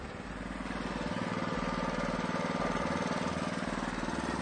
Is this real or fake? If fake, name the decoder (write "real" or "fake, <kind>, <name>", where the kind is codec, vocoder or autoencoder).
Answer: real